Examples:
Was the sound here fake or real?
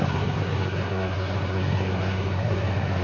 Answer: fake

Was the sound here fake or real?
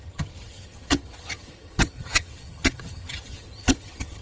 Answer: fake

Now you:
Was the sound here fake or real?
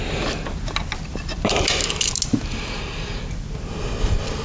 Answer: real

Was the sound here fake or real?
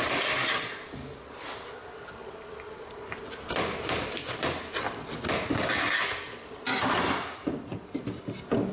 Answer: real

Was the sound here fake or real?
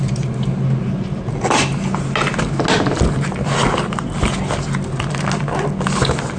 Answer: real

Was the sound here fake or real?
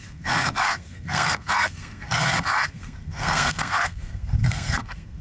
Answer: fake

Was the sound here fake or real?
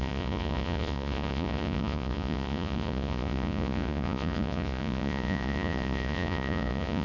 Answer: fake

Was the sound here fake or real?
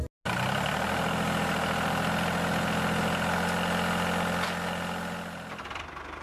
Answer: real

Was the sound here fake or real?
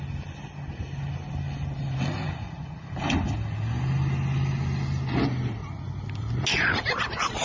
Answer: real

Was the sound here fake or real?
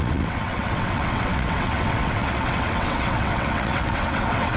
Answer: fake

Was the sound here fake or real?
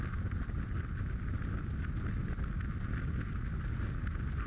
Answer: real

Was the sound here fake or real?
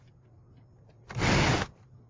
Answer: real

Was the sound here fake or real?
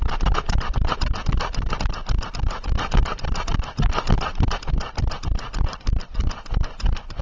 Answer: real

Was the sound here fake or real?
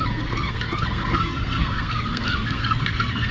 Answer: fake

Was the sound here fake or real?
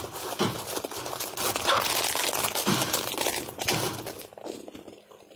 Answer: real